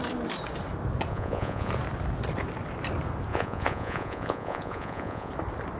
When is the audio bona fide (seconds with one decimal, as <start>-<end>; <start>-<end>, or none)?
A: 0.0-1.1; 1.7-3.3; 5.3-5.8